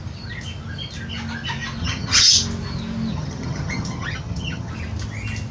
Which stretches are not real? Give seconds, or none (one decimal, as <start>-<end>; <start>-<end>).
1.8-2.3; 3.1-4.7